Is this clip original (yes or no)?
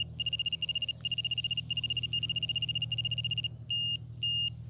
yes